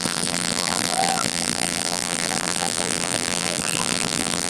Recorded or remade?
remade